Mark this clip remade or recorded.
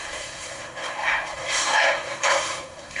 remade